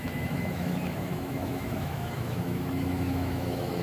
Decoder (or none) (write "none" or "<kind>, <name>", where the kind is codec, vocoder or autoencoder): autoencoder, DAC-VAE